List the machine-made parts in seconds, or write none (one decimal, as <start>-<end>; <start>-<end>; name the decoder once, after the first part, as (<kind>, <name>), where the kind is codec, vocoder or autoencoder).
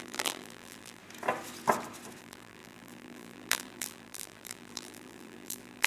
0.0-1.0 (vocoder, BigVGAN v2); 2.2-5.9